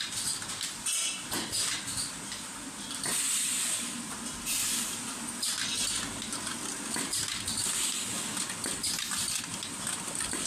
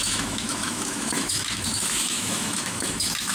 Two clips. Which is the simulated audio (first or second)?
second